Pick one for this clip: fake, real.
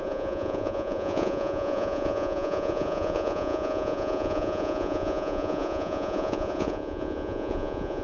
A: fake